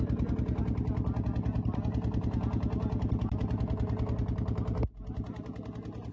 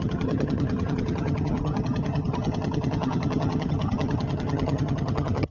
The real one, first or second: first